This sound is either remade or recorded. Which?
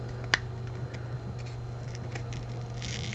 recorded